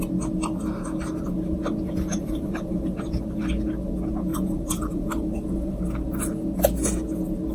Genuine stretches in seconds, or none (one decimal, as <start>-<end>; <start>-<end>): 0.0-2.1; 3.2-4.3; 5.8-7.5